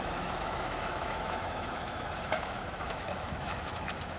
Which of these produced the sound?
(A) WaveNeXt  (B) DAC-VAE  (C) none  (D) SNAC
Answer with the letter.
B